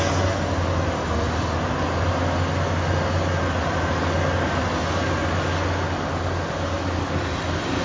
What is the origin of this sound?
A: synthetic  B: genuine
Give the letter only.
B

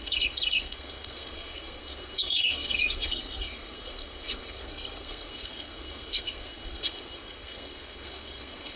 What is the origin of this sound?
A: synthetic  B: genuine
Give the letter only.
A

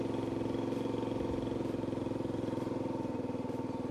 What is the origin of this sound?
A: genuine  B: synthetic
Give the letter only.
A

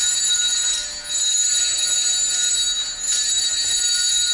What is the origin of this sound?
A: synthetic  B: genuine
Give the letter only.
B